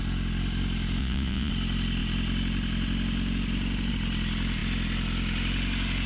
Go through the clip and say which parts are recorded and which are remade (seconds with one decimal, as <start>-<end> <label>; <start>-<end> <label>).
0.0-1.0 recorded; 1.0-1.5 remade; 1.5-6.1 recorded